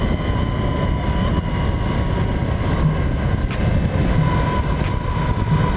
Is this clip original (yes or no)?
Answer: yes